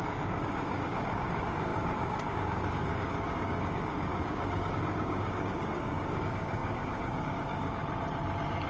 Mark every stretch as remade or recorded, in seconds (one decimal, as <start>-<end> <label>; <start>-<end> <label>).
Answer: 0.0-7.8 remade; 7.8-8.7 recorded